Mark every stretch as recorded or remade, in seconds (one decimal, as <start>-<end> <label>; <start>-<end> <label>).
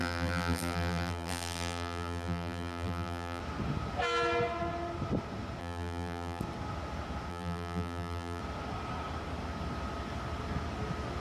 0.0-3.4 remade; 3.4-5.6 recorded; 5.6-6.4 remade; 6.4-7.3 recorded; 7.3-8.4 remade; 8.4-11.2 recorded